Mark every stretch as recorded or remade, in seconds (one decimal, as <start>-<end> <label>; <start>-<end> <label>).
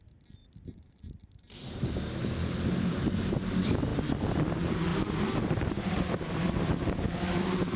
0.0-0.4 recorded; 0.4-3.3 remade; 3.3-4.9 recorded; 4.9-7.0 remade; 7.0-7.8 recorded